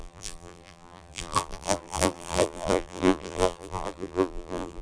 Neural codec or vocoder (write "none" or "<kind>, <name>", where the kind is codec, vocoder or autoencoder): vocoder, BigVGAN v2